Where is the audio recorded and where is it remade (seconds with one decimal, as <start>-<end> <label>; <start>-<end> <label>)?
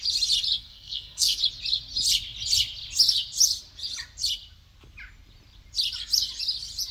0.0-0.6 recorded; 0.6-1.4 remade; 1.4-6.9 recorded